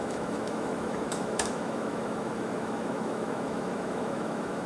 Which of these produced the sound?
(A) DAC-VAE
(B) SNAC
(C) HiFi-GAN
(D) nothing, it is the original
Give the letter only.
A